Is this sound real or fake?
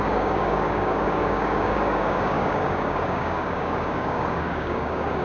fake